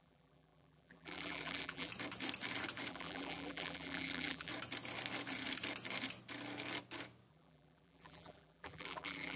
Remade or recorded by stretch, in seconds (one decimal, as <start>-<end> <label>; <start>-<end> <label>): 0.0-1.9 remade; 1.9-2.9 recorded; 2.9-4.5 remade; 4.5-7.3 recorded; 7.3-9.4 remade